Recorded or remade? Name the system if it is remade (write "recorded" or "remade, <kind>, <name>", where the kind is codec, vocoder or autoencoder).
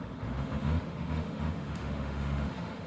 remade, autoencoder, DAC-VAE